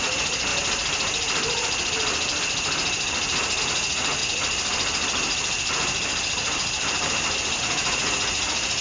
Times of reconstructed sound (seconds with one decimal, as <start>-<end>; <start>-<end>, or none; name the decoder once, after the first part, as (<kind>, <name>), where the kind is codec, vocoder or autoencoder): 0.0-0.5 (vocoder, Vocos); 3.6-4.2; 7.6-8.8